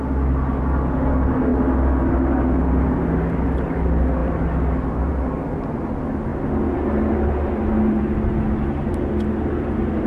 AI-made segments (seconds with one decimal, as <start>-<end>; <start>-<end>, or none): none